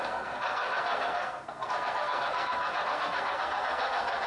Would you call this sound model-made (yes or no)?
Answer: yes